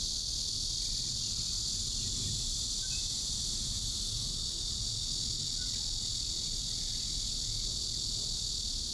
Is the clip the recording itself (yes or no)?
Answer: yes